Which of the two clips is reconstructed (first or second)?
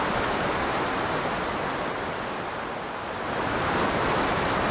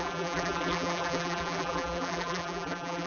second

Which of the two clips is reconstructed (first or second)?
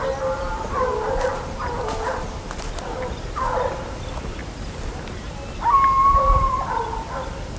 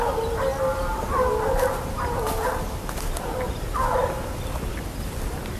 first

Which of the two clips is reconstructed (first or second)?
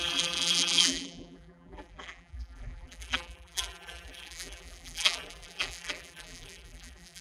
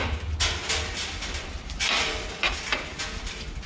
first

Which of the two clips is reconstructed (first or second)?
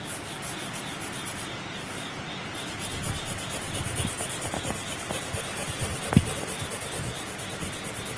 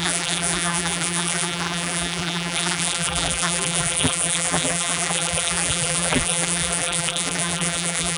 second